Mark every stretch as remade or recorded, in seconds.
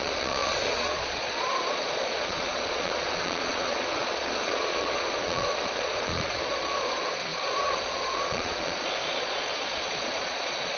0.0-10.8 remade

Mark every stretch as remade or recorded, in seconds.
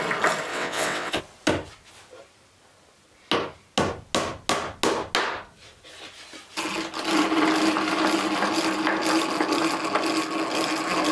0.0-0.5 recorded; 0.5-1.2 remade; 1.2-11.1 recorded